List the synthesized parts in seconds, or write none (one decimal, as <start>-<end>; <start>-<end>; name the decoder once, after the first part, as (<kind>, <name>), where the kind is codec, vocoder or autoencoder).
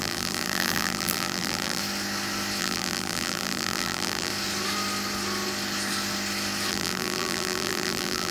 0.0-1.8 (vocoder, BigVGAN v2); 2.6-4.3; 6.7-8.3